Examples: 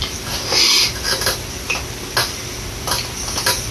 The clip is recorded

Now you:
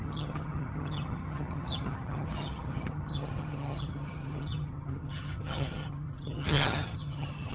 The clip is remade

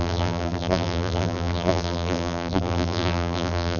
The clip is remade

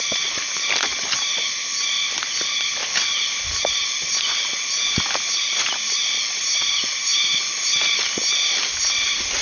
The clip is recorded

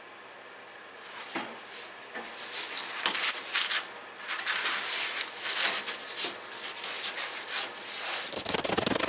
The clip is recorded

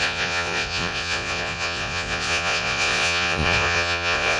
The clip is remade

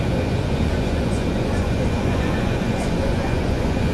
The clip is remade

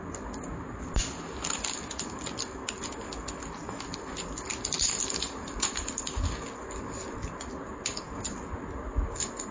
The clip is recorded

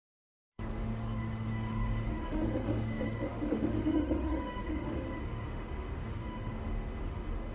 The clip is remade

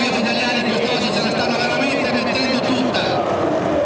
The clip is remade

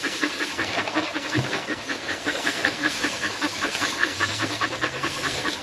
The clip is remade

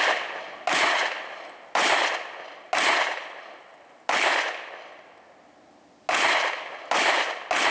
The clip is recorded